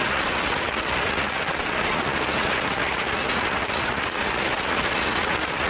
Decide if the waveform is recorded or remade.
remade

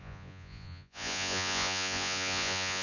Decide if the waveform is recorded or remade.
remade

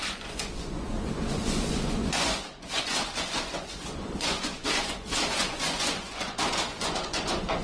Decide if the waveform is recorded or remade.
remade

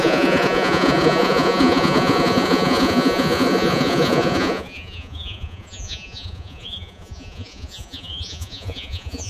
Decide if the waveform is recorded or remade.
remade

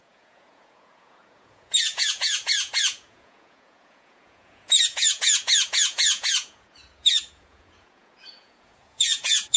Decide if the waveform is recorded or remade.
remade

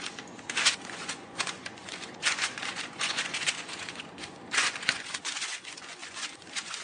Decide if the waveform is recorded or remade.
remade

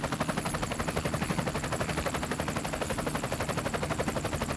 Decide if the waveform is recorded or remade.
recorded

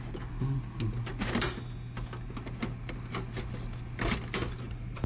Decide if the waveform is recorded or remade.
recorded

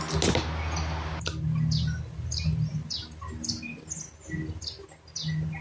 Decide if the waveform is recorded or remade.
recorded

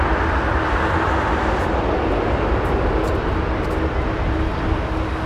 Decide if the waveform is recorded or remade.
recorded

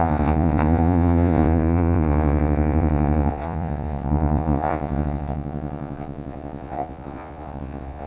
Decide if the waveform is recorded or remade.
remade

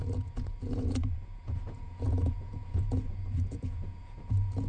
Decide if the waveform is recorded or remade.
remade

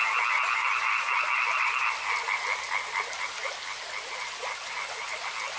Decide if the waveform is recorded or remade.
recorded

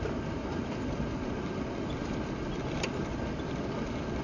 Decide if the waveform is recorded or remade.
recorded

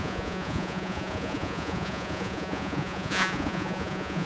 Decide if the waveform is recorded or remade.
remade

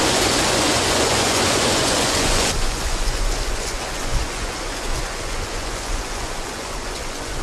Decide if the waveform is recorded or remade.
remade